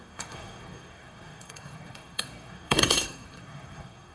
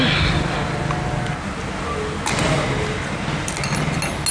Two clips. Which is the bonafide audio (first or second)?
second